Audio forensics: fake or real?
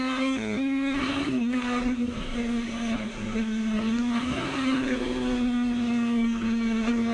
fake